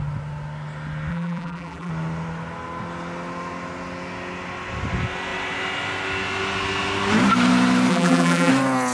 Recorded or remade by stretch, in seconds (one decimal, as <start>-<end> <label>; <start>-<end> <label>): 0.0-1.1 recorded; 1.1-1.9 remade; 1.9-7.9 recorded; 7.9-8.5 remade; 8.5-8.9 recorded